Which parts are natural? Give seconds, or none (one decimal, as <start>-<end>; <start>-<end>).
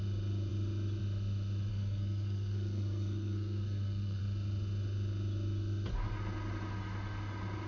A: 0.0-1.7; 4.2-7.7